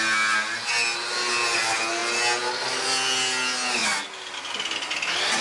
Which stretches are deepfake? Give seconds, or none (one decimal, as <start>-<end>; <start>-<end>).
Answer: none